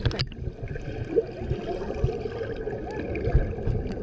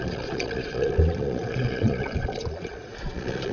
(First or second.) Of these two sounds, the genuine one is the first